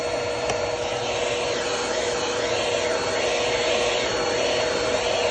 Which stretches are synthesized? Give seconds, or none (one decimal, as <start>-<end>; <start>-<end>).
none